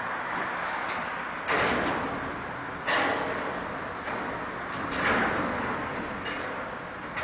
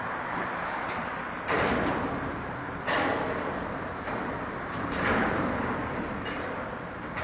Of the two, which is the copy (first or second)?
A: second